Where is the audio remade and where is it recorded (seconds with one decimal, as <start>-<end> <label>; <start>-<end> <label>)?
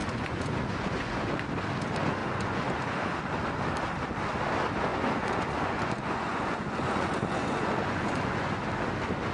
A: 0.0-1.4 remade; 1.4-2.2 recorded; 2.2-3.2 remade; 3.2-4.9 recorded; 4.9-8.6 remade; 8.6-9.3 recorded